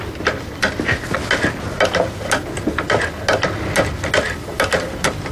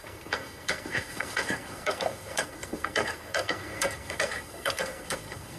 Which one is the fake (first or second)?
second